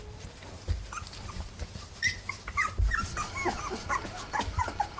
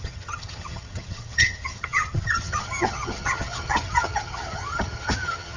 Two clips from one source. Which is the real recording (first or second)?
first